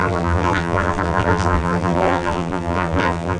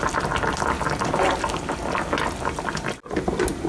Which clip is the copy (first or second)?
first